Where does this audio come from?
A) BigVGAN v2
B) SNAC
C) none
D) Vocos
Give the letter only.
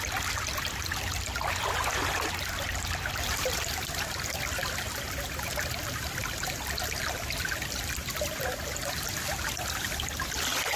C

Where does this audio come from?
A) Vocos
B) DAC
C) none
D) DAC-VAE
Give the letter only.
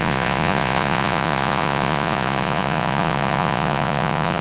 A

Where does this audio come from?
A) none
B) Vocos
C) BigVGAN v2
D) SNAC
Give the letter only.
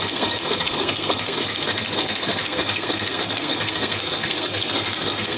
D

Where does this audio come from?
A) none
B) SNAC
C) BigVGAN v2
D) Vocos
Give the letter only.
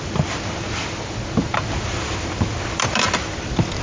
C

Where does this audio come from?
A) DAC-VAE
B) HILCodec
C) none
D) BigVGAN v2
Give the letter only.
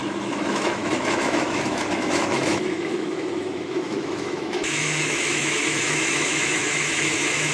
A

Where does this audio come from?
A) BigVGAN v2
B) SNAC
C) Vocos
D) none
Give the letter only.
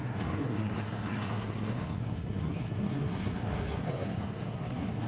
B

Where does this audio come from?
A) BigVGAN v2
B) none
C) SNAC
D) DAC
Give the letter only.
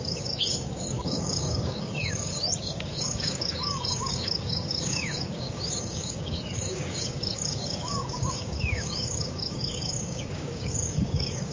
D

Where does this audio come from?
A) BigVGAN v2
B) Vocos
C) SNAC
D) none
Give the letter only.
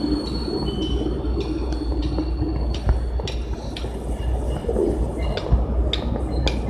D